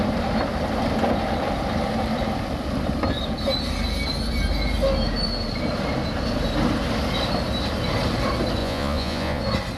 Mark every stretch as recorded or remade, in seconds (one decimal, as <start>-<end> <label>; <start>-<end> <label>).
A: 0.0-8.6 recorded; 8.6-9.4 remade; 9.4-9.8 recorded